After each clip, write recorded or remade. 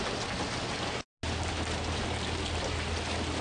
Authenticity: recorded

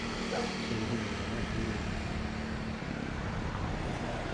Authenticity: recorded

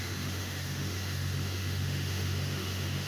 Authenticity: remade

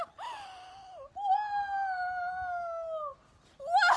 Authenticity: recorded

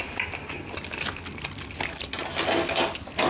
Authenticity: recorded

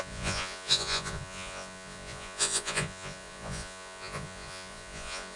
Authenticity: remade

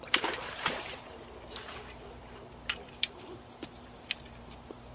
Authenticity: remade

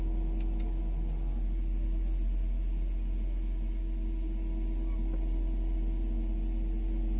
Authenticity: recorded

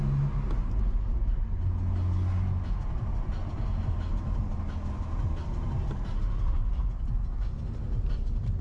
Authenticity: recorded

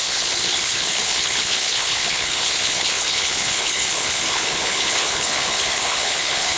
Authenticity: remade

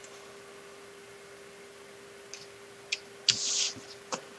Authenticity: recorded